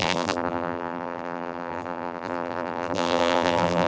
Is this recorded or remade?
remade